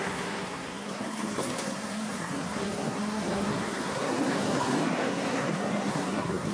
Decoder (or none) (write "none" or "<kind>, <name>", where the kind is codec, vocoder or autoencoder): codec, SNAC